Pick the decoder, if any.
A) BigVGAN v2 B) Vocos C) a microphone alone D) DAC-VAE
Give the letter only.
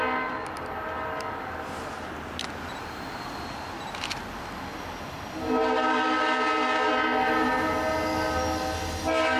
C